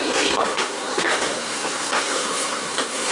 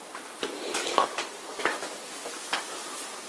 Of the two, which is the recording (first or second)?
second